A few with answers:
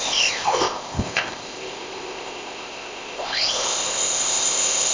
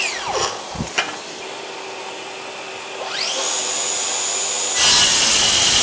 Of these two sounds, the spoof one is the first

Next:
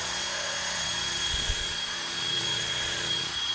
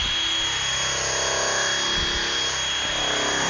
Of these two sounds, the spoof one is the first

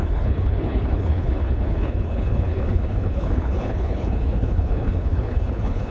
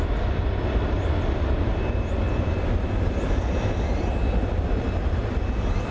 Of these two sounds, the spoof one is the first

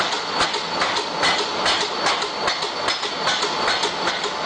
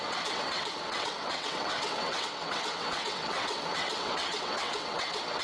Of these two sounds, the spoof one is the second